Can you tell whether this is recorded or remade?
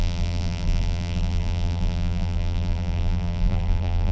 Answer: remade